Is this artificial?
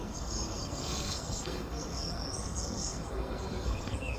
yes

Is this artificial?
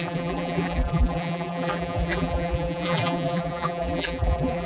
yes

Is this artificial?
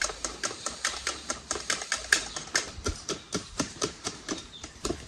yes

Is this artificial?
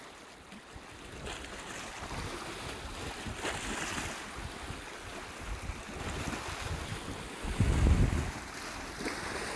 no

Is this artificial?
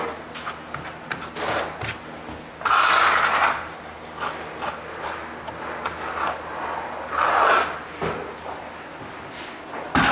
no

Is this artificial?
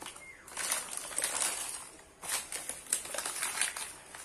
no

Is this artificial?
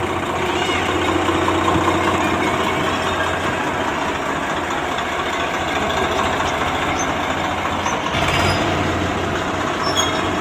no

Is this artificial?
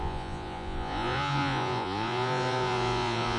yes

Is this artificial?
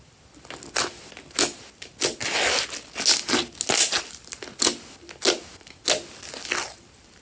no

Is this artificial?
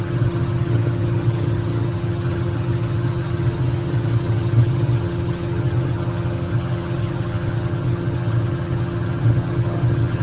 yes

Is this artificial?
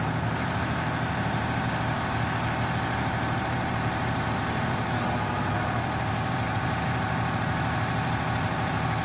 yes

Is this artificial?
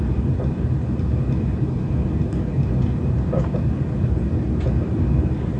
no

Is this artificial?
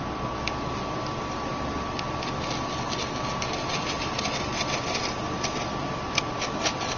no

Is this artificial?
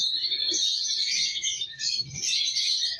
yes